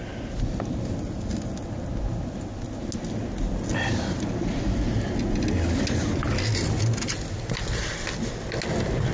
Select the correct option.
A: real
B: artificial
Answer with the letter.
A